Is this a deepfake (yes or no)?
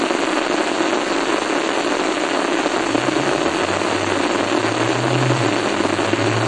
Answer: no